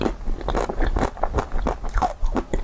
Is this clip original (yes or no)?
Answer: yes